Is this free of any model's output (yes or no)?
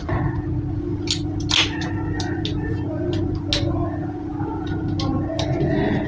yes